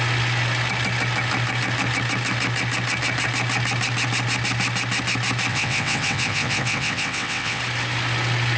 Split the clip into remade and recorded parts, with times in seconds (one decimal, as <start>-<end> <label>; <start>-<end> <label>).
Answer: 0.0-5.5 recorded; 5.5-7.6 remade; 7.6-8.6 recorded